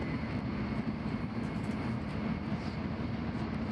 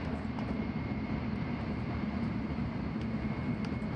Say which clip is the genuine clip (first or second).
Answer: first